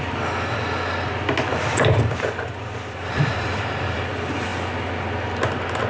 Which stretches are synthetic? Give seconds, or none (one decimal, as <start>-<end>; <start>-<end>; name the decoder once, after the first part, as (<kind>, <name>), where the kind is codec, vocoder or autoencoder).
1.5-4.1 (vocoder, BigVGAN v2)